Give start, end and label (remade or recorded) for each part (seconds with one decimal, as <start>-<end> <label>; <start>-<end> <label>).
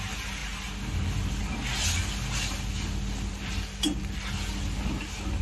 0.0-5.4 recorded